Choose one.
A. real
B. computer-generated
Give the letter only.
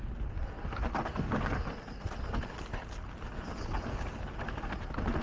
A